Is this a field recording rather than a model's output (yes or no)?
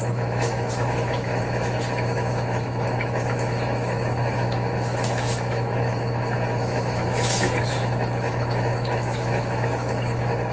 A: no